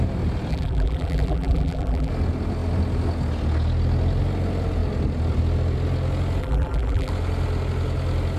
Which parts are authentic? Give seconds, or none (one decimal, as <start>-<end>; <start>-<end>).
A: 0.0-0.5; 2.1-6.4; 7.1-8.4